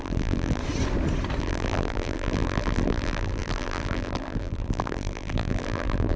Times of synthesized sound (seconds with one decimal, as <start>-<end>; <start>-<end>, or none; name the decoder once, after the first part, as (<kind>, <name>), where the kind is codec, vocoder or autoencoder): 0.0-0.6 (vocoder, BigVGAN v2); 1.4-6.2